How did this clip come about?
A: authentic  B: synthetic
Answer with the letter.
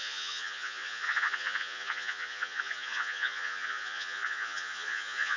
B